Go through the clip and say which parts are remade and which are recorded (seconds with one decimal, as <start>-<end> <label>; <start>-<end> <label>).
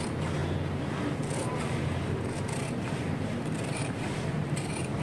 0.0-0.4 remade; 0.4-3.4 recorded; 3.4-5.0 remade